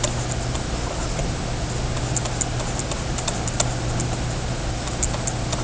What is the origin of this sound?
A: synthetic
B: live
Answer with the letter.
B